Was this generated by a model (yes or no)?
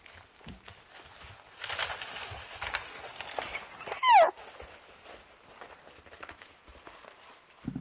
no